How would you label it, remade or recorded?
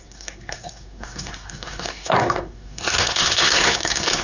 remade